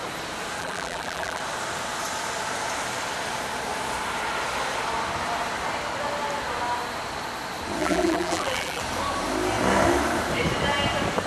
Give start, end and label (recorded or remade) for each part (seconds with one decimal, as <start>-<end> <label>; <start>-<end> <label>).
0.0-0.6 recorded; 0.6-1.4 remade; 1.4-7.8 recorded; 7.8-8.8 remade; 8.8-11.3 recorded